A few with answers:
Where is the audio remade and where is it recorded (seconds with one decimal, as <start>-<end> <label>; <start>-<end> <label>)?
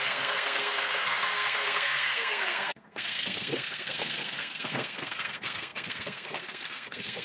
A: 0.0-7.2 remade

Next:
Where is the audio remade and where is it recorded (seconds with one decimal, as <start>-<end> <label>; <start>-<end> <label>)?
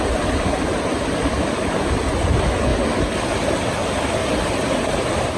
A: 0.0-5.4 recorded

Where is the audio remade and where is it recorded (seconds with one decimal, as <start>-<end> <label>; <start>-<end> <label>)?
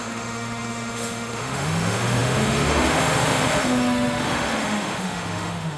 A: 0.0-5.8 remade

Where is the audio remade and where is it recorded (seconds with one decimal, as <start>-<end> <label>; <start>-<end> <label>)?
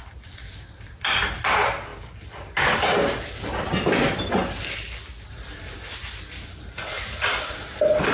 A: 0.0-8.1 recorded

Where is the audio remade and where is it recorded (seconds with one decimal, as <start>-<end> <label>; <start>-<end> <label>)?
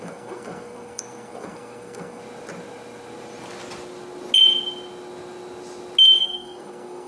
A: 0.0-2.2 remade; 2.2-6.2 recorded; 6.2-7.1 remade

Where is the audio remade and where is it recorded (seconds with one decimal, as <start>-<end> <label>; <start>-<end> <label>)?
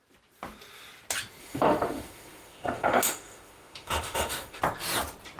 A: 0.0-1.4 recorded; 1.4-4.6 remade; 4.6-5.4 recorded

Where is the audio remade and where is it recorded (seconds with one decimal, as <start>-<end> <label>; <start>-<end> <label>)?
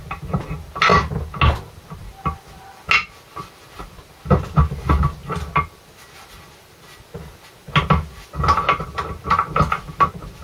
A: 0.0-10.4 recorded